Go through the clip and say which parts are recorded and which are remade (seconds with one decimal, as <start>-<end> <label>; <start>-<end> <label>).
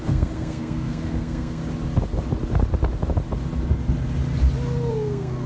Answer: 0.0-1.6 remade; 1.6-4.9 recorded; 4.9-5.5 remade